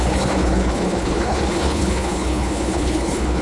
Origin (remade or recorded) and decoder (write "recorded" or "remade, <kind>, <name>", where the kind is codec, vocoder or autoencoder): remade, codec, HILCodec